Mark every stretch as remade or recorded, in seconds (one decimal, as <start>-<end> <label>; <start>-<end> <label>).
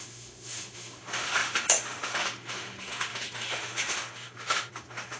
0.0-5.2 remade